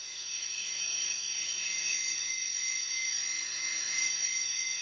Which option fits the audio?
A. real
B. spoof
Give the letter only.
B